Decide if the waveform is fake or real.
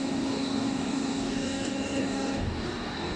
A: fake